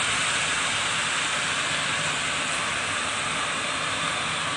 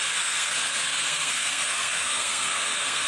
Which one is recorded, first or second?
first